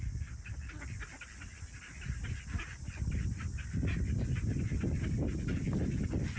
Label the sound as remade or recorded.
recorded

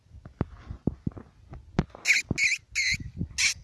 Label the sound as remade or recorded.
recorded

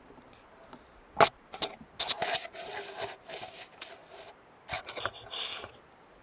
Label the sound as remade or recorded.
recorded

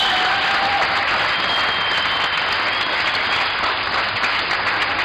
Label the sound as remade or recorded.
recorded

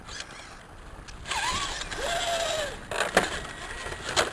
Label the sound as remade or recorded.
recorded